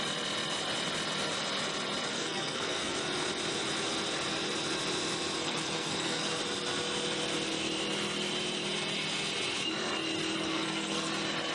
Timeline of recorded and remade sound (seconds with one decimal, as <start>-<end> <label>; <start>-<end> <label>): 0.0-2.1 recorded; 2.1-3.0 remade; 3.0-5.4 recorded; 5.4-6.4 remade; 6.4-10.4 recorded; 10.4-11.1 remade; 11.1-11.5 recorded